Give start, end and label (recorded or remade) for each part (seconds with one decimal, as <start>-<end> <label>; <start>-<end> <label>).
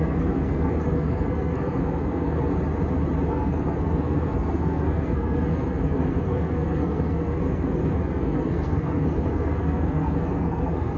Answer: 0.0-2.5 remade; 2.5-3.3 recorded; 3.3-11.0 remade